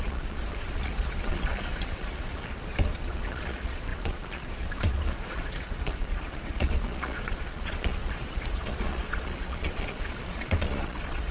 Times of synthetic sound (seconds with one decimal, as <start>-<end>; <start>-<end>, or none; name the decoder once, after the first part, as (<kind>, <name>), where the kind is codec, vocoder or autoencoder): 0.0-11.3 (vocoder, Vocos)